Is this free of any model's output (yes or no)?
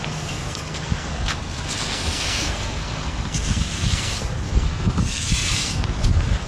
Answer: no